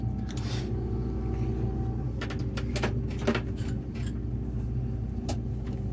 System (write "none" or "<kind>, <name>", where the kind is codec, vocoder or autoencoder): none